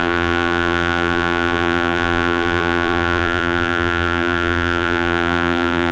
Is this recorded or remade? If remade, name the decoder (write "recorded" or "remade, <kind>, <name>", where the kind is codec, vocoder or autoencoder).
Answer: remade, vocoder, BigVGAN v2